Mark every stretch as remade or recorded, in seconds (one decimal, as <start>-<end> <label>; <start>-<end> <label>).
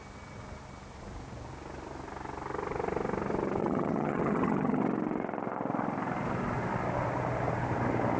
0.0-3.6 recorded; 3.6-4.8 remade; 4.8-8.2 recorded